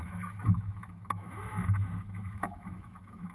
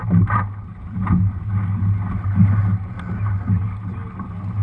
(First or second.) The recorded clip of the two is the second